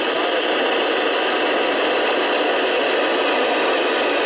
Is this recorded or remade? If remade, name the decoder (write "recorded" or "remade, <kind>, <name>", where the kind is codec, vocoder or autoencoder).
recorded